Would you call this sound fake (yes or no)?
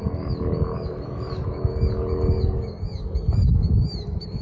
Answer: yes